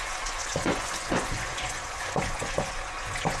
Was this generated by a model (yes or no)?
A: yes